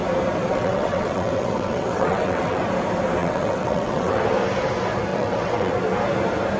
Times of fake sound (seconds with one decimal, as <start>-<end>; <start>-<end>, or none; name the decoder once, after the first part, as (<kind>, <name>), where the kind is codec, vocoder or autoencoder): 0.4-2.6 (vocoder, WaveNeXt); 3.2-4.2; 5.1-5.7